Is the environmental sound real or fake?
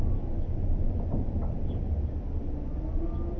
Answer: real